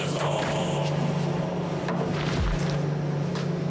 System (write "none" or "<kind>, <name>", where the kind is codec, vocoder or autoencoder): none